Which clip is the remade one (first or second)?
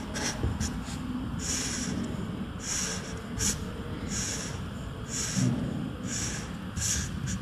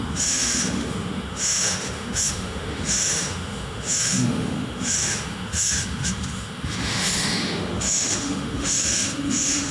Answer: second